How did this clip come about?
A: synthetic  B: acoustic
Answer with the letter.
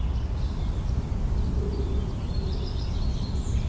B